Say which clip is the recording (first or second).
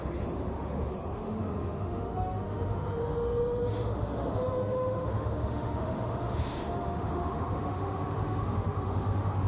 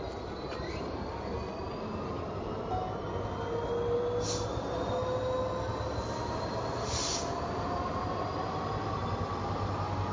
second